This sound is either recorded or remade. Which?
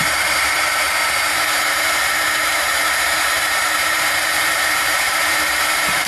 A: remade